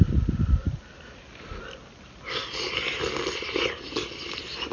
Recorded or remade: recorded